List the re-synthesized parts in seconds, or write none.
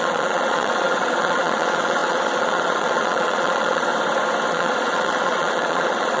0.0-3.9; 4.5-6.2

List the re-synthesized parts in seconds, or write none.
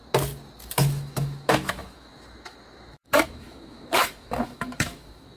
0.7-5.4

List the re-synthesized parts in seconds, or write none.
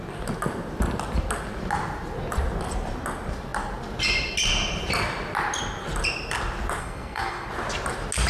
6.8-7.5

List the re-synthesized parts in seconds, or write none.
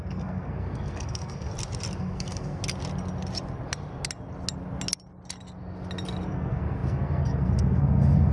0.0-1.5; 2.0-2.6; 6.3-8.3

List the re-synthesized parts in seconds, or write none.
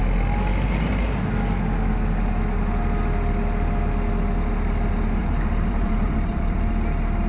0.5-1.2; 5.2-6.7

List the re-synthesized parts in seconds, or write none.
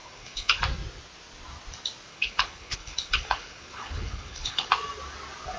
0.0-0.6; 2.1-4.7